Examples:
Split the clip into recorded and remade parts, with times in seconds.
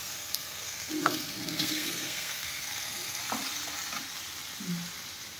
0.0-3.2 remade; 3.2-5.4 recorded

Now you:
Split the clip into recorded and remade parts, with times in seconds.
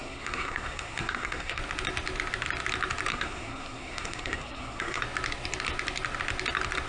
0.0-1.6 remade; 1.6-3.1 recorded; 3.1-5.0 remade; 5.0-6.9 recorded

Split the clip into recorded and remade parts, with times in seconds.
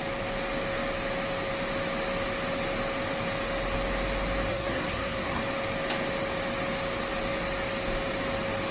0.0-4.5 recorded; 4.5-5.4 remade; 5.4-8.7 recorded